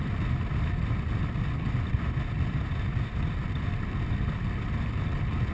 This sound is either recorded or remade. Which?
recorded